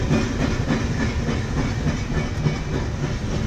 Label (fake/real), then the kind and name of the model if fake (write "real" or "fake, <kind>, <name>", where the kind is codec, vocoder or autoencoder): real